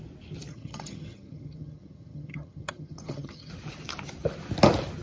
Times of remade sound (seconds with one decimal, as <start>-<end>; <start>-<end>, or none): 0.5-3.5